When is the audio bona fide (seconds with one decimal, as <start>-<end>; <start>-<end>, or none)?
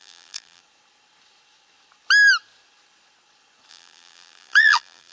0.6-3.7